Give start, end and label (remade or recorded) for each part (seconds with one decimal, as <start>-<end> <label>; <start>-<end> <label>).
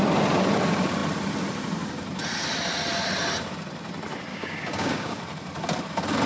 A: 0.0-4.3 recorded; 4.3-5.2 remade; 5.2-6.3 recorded